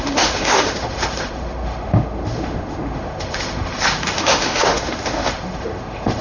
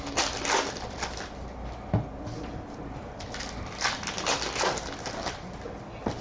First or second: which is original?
second